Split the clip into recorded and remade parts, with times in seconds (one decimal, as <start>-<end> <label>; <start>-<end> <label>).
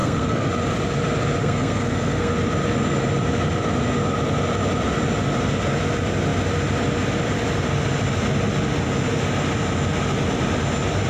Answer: 0.0-0.5 remade; 0.5-1.4 recorded; 1.4-2.3 remade; 2.3-11.1 recorded